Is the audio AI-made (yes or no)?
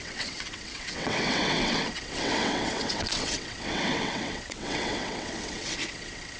yes